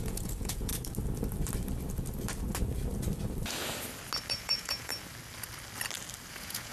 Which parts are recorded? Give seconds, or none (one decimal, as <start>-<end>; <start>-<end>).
0.7-4.3; 4.9-6.3